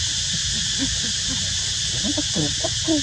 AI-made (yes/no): no